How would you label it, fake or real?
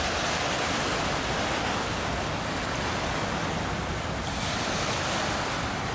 real